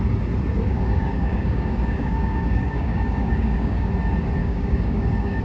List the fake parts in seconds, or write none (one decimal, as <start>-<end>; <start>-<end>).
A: 0.7-3.9; 4.4-5.4

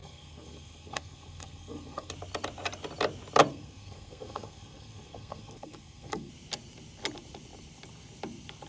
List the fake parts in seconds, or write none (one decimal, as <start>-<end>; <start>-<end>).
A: 0.0-2.1; 3.5-6.3

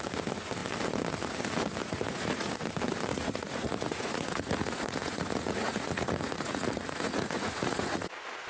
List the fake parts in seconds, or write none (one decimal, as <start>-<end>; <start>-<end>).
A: 1.8-2.5; 3.1-8.1

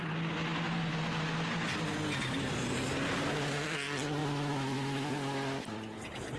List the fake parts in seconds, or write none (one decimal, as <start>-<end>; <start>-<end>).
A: 4.2-5.1

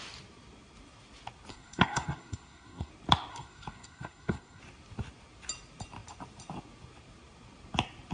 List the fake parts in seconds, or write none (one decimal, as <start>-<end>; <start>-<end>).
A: 1.5-2.9; 3.3-4.6

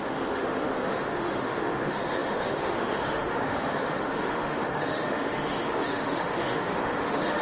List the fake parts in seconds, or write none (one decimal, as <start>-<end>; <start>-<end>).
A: 0.0-7.4

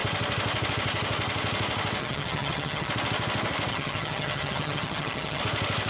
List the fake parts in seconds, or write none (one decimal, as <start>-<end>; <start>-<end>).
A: 2.0-2.9; 3.7-5.4

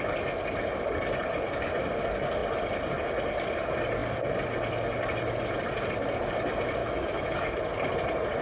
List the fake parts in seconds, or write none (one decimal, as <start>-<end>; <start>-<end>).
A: 6.8-7.6